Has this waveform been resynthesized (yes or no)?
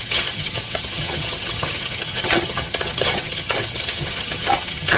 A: yes